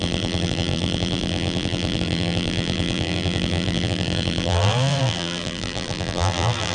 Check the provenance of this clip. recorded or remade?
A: remade